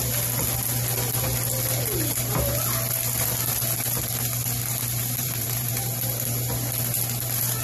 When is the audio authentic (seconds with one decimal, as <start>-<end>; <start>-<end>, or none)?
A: 0.0-5.0; 5.7-7.6